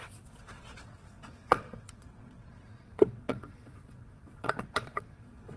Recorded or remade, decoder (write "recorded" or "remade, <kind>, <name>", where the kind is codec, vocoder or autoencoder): remade, vocoder, WaveNeXt